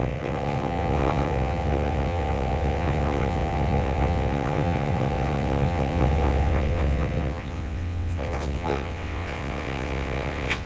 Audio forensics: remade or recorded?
remade